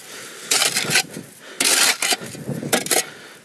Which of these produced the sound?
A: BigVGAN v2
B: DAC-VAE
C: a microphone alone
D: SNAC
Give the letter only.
C